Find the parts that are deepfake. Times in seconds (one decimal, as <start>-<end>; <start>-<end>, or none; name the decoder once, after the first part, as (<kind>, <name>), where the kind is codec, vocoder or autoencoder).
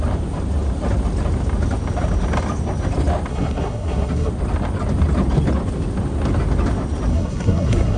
3.3-4.3 (codec, SNAC); 7.1-8.0